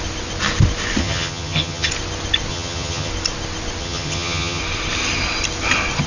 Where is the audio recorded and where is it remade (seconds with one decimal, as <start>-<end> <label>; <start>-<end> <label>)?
0.0-1.0 recorded; 1.0-1.9 remade; 1.9-2.5 recorded; 2.5-3.1 remade; 3.1-3.8 recorded; 3.8-4.6 remade; 4.6-6.1 recorded